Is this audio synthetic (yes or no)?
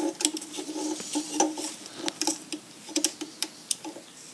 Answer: no